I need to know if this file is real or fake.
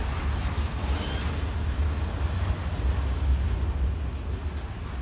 real